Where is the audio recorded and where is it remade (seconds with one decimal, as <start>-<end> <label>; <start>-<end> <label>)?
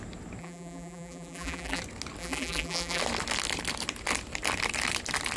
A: 0.0-0.4 recorded; 0.4-1.8 remade; 1.8-2.2 recorded; 2.2-3.0 remade; 3.0-5.4 recorded